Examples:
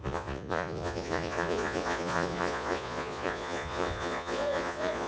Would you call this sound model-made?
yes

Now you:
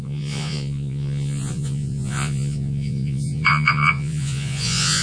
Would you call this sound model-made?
yes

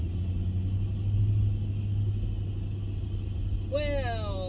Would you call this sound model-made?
no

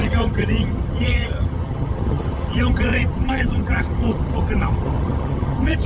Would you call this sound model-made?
yes